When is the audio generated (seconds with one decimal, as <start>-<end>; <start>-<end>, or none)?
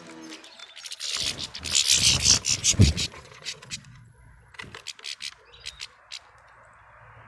2.6-4.5